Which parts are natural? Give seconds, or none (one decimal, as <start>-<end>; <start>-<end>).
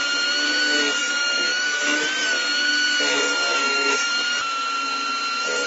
0.0-1.0; 1.8-3.6; 4.1-5.7